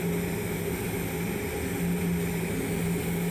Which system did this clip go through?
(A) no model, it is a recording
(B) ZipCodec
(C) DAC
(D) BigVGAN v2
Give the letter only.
A